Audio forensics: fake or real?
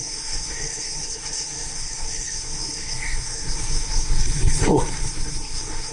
fake